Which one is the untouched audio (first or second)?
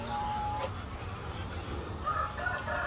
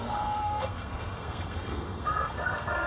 first